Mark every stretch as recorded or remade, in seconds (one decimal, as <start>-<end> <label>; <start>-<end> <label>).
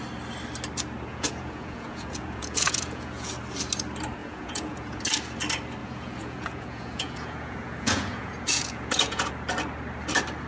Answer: 0.0-1.1 recorded; 1.1-3.3 remade; 3.3-4.2 recorded; 4.2-5.0 remade; 5.0-5.8 recorded; 5.8-9.3 remade; 9.3-10.5 recorded